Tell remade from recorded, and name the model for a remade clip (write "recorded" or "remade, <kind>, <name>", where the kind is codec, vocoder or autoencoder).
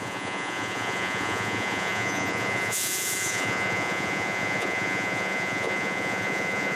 remade, vocoder, Vocos